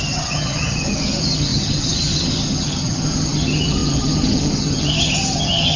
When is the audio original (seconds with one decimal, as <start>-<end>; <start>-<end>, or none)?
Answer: none